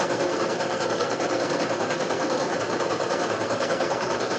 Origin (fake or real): fake